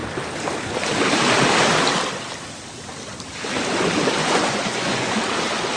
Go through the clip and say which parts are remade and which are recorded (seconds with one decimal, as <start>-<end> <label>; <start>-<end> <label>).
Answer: 0.0-4.2 recorded; 4.2-5.2 remade; 5.2-5.8 recorded